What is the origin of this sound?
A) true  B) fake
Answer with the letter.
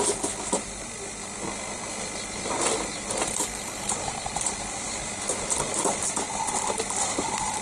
A